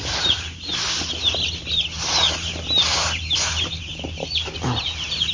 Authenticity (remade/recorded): recorded